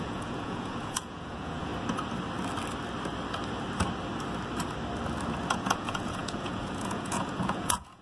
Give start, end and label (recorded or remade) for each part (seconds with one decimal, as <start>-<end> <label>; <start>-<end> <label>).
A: 0.0-1.7 remade; 1.7-5.5 recorded; 5.5-8.0 remade